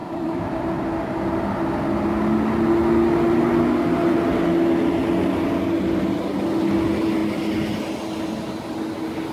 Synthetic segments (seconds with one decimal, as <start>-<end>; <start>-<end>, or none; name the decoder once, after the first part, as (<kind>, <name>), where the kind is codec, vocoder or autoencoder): 0.0-0.8 (vocoder, BigVGAN v2)